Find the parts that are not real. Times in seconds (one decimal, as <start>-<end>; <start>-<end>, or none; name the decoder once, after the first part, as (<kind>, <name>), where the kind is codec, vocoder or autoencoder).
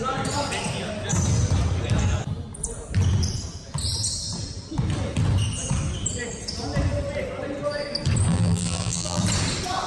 8.3-9.2 (vocoder, BigVGAN v2)